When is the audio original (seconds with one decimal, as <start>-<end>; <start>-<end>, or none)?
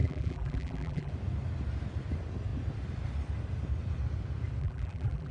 1.1-4.6